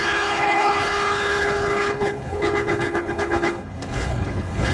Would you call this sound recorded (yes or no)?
no